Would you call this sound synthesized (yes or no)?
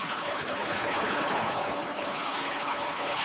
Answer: yes